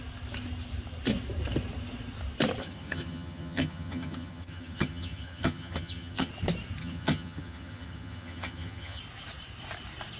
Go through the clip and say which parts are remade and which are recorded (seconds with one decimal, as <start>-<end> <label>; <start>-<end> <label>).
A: 0.0-2.6 recorded; 2.6-6.3 remade; 6.3-6.8 recorded; 6.8-9.0 remade; 9.0-10.2 recorded